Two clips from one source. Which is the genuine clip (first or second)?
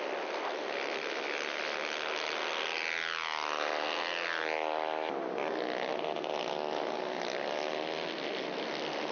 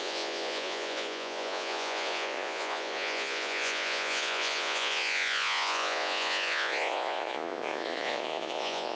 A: first